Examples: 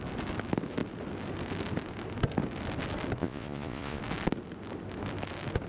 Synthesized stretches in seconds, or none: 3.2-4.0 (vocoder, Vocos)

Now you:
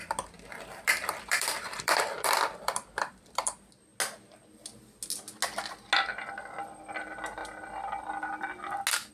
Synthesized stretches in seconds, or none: 0.8-3.9 (vocoder, BigVGAN v2); 6.3-7.4

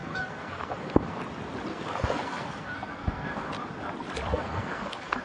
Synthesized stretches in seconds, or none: 0.0-1.2 (codec, SNAC); 1.7-3.5; 4.3-5.2

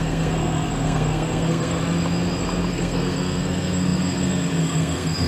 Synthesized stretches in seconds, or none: 0.0-1.8 (codec, SNAC); 2.7-5.3

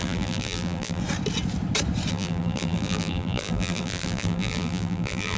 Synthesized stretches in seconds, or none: 0.0-1.0 (vocoder, BigVGAN v2); 2.1-5.4

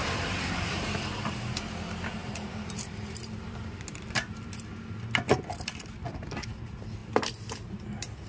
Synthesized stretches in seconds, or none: 0.0-0.7 (vocoder, BigVGAN v2); 2.2-4.8